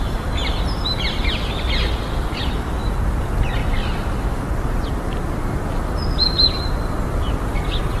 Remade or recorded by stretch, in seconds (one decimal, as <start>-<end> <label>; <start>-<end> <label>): 0.0-3.6 recorded; 3.6-6.7 remade; 6.7-8.0 recorded